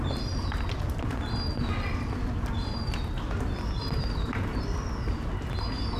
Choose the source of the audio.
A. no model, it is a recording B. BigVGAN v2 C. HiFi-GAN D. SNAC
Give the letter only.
A